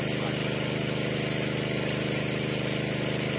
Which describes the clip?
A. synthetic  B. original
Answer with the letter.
B